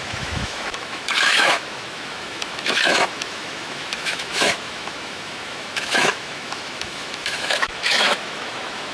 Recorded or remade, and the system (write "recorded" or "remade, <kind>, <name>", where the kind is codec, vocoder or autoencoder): remade, autoencoder, DAC-VAE